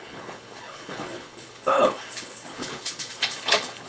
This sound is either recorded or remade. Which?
remade